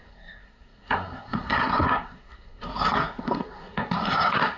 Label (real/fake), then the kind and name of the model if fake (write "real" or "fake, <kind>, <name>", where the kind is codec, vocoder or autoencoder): fake, codec, SNAC